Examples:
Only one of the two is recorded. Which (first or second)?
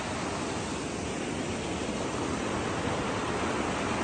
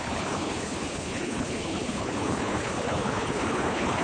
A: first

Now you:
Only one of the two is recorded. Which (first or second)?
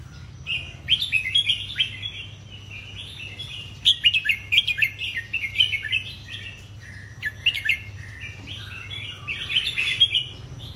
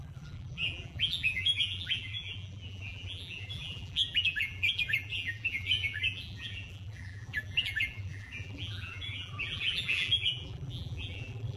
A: first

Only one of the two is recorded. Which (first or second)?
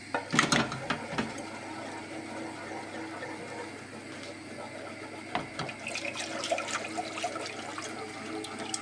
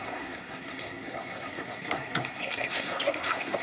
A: first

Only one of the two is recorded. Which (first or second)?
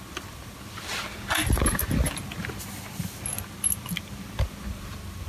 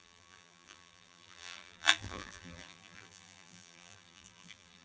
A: first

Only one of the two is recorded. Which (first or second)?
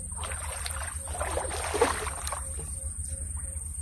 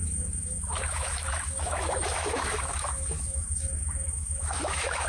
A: first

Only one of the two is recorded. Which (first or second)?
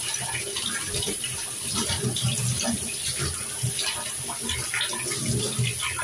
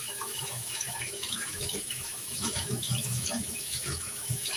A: first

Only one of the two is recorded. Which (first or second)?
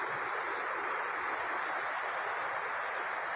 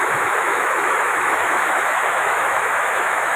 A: first